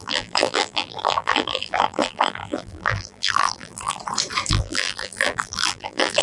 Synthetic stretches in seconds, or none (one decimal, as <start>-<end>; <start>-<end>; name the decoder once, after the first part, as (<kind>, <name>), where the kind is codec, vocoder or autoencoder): 0.0-4.0 (vocoder, BigVGAN v2); 4.5-6.2